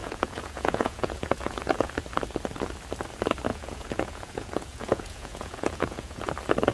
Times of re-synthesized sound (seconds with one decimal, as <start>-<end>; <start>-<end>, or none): 0.0-1.9; 3.5-6.3